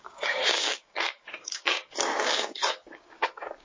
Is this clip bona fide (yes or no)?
no